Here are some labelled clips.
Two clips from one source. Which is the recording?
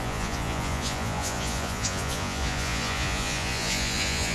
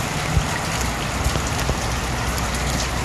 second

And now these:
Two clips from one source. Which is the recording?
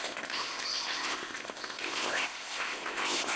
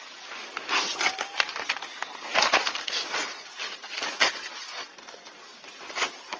second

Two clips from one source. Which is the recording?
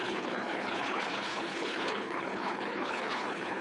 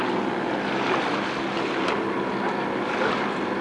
second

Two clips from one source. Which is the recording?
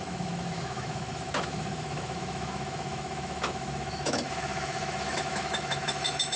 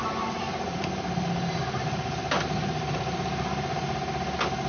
second